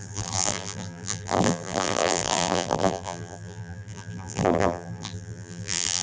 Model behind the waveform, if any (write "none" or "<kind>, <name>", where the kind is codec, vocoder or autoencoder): vocoder, BigVGAN v2